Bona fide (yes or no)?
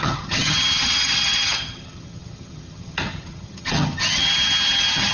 no